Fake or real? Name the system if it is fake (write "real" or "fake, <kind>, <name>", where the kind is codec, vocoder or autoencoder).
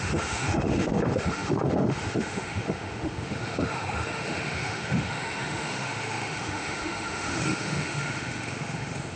fake, autoencoder, DAC-VAE